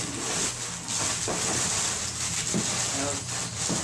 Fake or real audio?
real